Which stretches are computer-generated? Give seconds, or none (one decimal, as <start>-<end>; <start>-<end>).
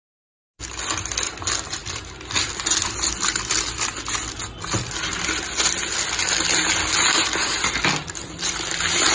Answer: none